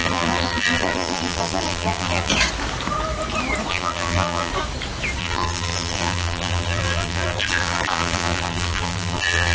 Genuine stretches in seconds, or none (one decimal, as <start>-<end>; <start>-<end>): 2.3-3.7; 4.5-5.2